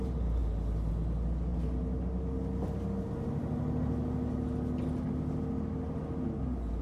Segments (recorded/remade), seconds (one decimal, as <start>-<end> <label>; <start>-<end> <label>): 0.0-6.8 recorded